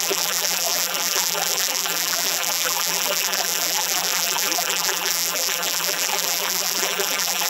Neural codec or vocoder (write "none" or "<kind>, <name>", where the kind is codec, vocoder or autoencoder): vocoder, BigVGAN v2